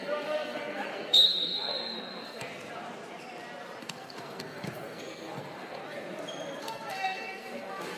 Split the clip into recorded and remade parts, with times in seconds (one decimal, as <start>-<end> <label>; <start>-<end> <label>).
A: 0.0-2.5 remade; 2.5-3.8 recorded; 3.8-5.8 remade; 5.8-6.6 recorded; 6.6-8.0 remade